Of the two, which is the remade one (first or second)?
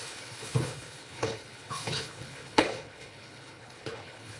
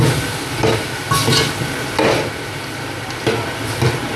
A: first